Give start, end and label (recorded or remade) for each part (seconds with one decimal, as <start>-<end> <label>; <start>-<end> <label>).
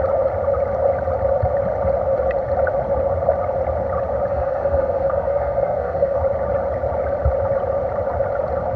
0.0-4.3 recorded; 4.3-6.2 remade; 6.2-8.8 recorded